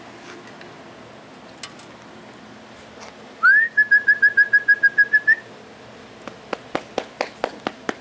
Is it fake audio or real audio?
real